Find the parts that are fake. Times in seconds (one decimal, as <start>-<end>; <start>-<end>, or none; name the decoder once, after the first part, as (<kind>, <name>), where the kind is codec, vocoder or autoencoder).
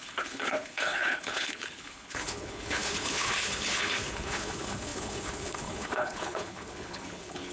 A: 0.0-7.5 (codec, HILCodec)